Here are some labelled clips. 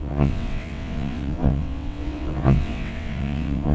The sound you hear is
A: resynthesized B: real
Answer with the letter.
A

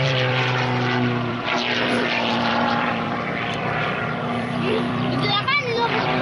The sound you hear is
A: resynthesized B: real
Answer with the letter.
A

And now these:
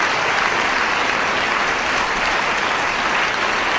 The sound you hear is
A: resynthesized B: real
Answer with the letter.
B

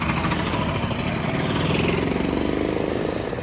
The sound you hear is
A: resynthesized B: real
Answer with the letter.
B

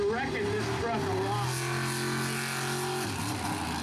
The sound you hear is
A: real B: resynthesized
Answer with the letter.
A